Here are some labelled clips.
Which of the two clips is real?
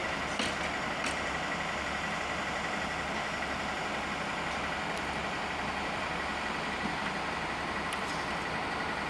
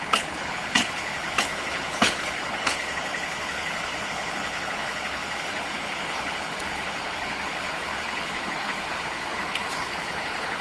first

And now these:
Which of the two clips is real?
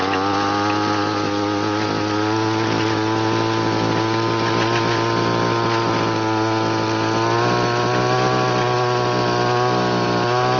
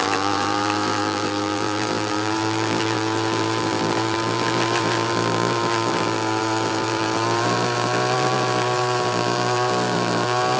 first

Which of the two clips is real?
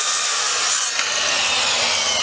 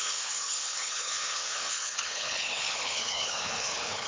first